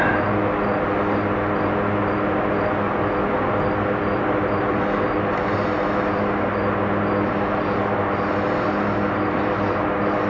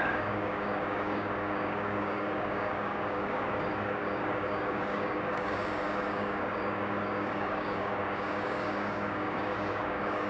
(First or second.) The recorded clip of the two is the first